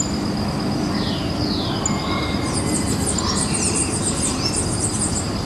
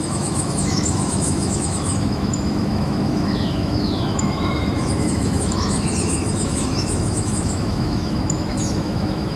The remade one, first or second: second